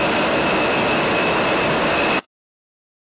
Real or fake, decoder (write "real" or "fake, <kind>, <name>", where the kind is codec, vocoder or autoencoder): real